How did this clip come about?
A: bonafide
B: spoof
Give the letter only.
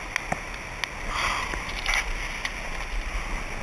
A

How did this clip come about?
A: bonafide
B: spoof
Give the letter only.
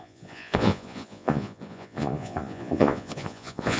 B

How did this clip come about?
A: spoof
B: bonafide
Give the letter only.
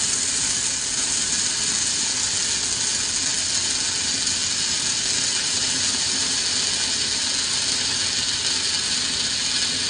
B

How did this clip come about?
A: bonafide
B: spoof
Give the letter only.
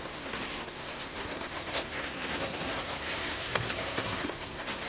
B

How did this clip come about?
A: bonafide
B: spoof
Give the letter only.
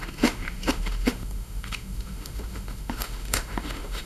B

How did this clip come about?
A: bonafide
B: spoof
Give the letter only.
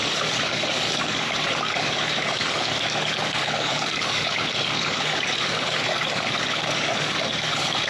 B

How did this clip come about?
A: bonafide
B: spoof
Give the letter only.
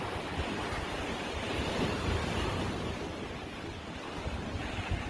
A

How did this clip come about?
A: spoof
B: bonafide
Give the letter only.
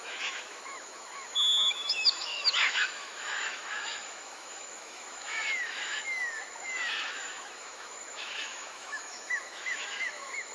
A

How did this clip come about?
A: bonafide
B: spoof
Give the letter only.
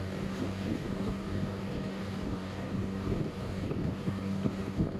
B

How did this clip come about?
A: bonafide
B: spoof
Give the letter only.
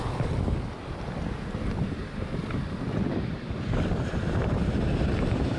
A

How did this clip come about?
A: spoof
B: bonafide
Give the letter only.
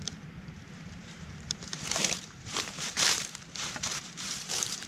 A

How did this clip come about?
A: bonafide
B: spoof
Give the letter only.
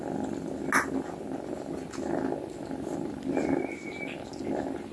A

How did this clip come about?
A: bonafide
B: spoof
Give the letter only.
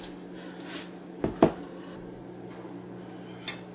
A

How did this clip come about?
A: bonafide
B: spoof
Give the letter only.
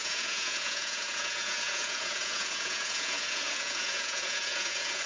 B